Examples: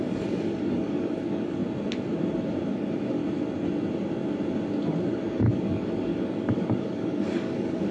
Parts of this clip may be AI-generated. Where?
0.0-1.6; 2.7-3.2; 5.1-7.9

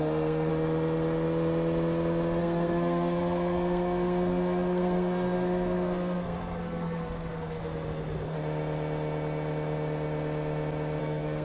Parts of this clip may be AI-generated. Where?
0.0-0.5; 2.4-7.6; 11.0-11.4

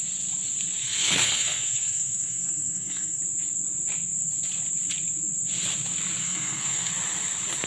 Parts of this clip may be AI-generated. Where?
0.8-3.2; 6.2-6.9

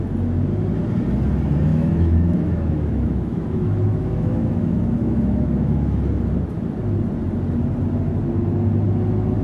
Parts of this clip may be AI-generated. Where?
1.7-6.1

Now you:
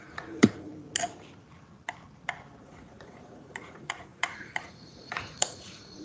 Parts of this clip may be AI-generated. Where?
0.0-0.7; 2.6-6.0

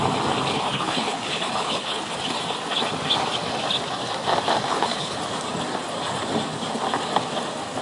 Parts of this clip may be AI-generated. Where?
0.5-2.2; 4.7-5.2

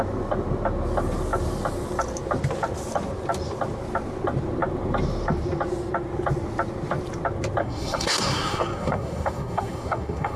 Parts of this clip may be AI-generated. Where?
7.6-10.4